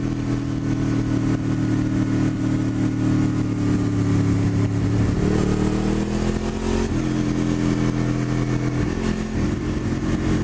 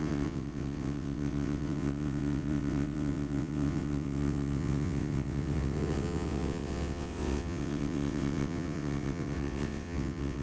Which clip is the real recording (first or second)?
first